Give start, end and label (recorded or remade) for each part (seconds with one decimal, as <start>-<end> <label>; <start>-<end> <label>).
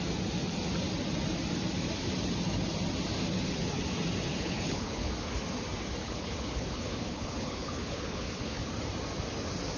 0.0-4.3 recorded; 4.3-5.1 remade; 5.1-6.0 recorded; 6.0-8.7 remade; 8.7-9.8 recorded